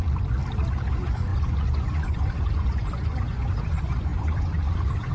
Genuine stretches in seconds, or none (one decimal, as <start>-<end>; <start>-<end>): 0.0-0.9